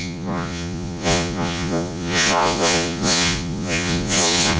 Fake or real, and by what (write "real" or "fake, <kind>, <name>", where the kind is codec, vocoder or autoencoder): fake, vocoder, Vocos